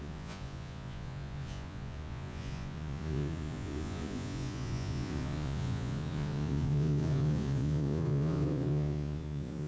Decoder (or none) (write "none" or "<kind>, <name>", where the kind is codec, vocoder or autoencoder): vocoder, Vocos